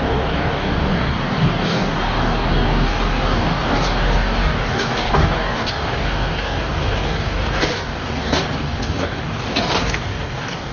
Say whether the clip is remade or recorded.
remade